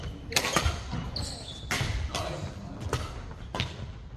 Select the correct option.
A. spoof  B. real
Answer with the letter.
B